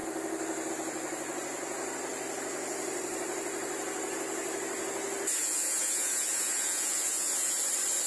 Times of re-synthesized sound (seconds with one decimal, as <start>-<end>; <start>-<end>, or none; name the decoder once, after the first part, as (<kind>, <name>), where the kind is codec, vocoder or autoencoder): 5.4-7.6 (vocoder, Vocos)